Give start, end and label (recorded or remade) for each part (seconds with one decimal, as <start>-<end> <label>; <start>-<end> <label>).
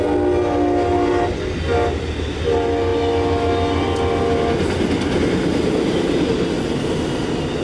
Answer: 0.0-7.6 recorded